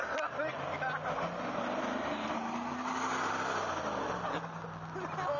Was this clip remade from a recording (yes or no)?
no